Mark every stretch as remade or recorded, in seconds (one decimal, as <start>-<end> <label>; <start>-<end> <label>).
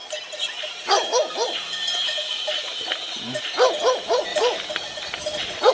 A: 0.0-3.4 remade; 3.4-4.3 recorded; 4.3-5.7 remade